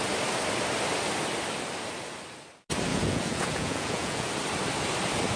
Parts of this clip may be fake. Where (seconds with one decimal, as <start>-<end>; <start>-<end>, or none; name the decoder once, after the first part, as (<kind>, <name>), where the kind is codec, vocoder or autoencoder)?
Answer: 2.9-4.3 (vocoder, Vocos)